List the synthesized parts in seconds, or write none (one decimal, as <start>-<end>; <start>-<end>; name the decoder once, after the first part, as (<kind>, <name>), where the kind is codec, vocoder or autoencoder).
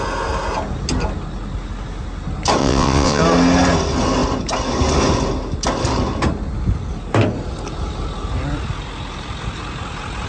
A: 2.6-3.2 (vocoder, WaveNeXt)